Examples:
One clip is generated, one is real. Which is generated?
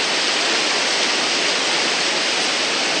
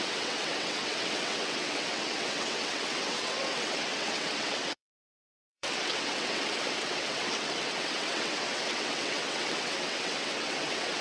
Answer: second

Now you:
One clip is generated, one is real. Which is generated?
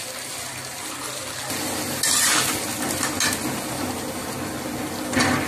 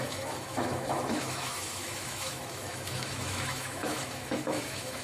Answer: second